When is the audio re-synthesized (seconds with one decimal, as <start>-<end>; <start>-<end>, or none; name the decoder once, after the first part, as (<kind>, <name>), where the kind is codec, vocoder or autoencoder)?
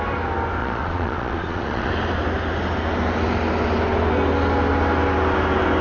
0.6-1.9 (vocoder, Vocos)